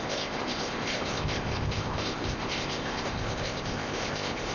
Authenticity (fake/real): fake